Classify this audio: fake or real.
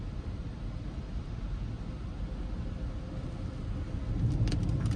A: real